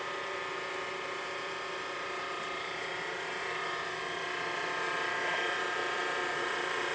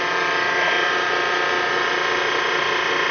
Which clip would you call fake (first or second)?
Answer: first